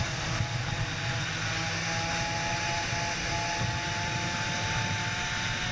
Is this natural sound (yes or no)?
yes